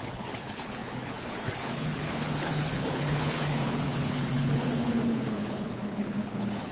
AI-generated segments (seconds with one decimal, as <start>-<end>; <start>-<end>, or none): 0.0-6.7